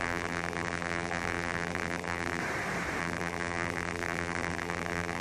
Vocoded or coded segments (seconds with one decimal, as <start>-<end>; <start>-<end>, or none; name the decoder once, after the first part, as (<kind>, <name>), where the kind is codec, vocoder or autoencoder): 0.0-2.4 (vocoder, BigVGAN v2); 3.0-5.2